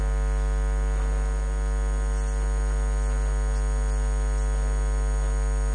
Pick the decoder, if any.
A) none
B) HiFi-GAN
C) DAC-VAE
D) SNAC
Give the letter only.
A